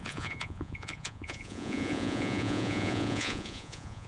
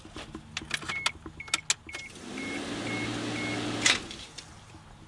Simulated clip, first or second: first